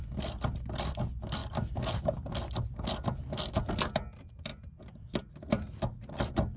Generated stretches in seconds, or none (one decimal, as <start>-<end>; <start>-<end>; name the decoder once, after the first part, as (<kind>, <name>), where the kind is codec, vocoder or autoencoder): none